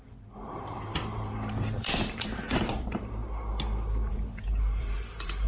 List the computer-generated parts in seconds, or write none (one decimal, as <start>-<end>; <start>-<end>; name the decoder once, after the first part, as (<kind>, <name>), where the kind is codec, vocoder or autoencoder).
0.0-3.2 (vocoder, BigVGAN v2); 4.1-5.5